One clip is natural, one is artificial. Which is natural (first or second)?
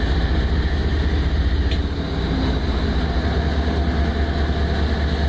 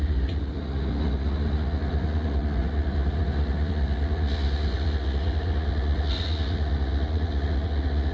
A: first